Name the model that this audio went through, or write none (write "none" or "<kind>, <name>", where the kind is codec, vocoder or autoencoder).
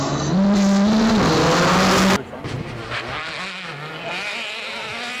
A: none